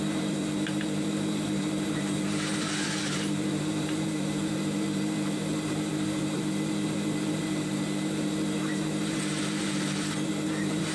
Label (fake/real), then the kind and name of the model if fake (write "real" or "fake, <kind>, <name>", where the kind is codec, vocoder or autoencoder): fake, vocoder, BigVGAN v2